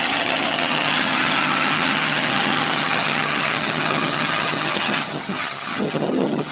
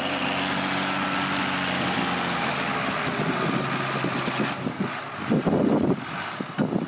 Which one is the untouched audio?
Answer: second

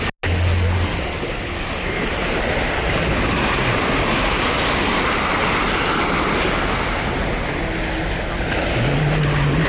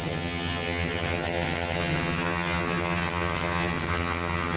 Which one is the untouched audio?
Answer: first